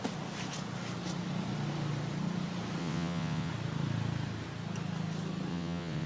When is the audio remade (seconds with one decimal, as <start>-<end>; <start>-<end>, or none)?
2.8-3.5; 5.5-6.1